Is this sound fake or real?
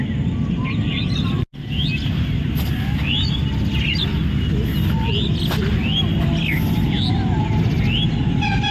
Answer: real